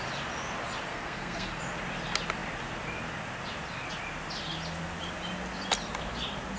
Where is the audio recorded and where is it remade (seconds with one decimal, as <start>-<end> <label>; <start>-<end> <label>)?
0.0-0.9 recorded; 0.9-1.6 remade; 1.6-6.6 recorded